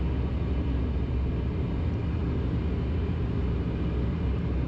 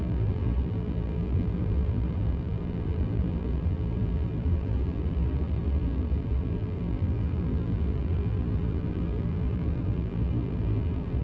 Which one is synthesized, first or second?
second